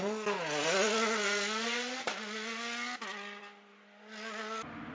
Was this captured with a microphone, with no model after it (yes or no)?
yes